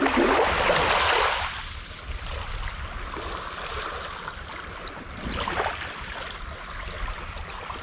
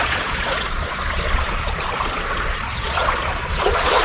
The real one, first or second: first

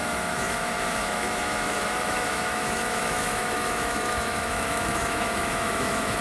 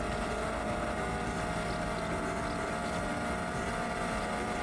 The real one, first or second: second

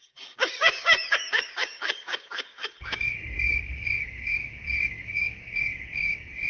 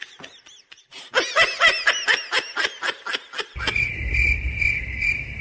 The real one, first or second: second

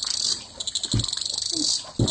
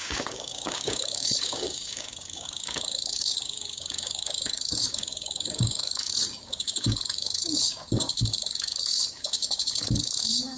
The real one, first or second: first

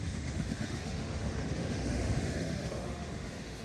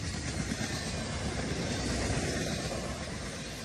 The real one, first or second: second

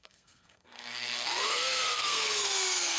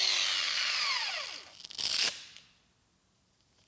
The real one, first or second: second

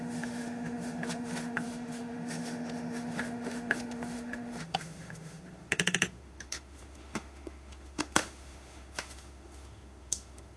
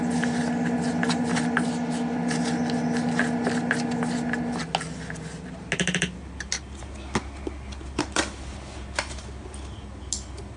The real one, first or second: second